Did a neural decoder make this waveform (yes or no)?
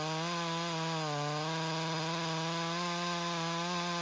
no